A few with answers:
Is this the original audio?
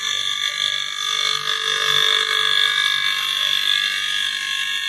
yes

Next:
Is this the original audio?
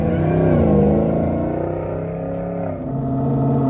yes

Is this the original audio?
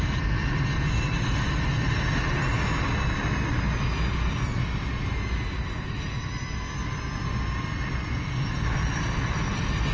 yes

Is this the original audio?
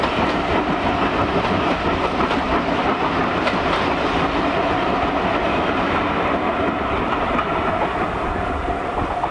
yes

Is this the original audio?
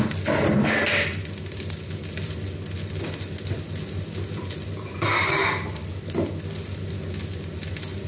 yes